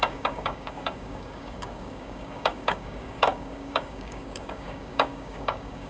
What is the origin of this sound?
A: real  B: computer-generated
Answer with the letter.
B